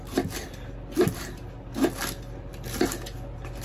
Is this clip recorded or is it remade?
recorded